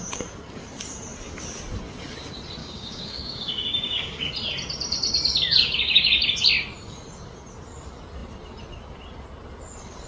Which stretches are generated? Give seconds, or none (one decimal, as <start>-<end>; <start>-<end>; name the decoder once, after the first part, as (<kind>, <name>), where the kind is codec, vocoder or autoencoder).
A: 2.6-4.3 (codec, DAC); 5.6-6.3